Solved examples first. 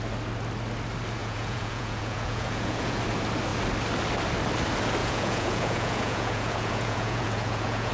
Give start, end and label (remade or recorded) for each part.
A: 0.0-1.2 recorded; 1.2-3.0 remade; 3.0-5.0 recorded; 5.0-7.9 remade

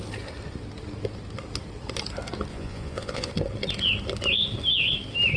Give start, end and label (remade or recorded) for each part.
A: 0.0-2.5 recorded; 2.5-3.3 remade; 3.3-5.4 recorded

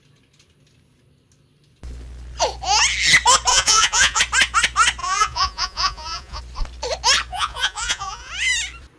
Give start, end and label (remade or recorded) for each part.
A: 0.0-3.5 recorded; 3.5-4.2 remade; 4.2-5.0 recorded; 5.0-6.4 remade; 6.4-7.3 recorded; 7.3-8.3 remade; 8.3-9.0 recorded

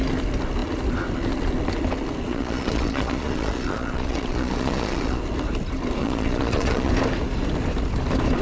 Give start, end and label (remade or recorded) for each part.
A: 0.0-2.3 recorded; 2.3-5.2 remade; 5.2-6.0 recorded; 6.0-6.9 remade; 6.9-8.4 recorded

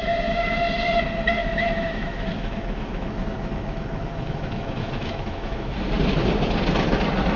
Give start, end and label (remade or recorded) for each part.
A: 0.0-1.4 recorded; 1.4-5.7 remade; 5.7-7.4 recorded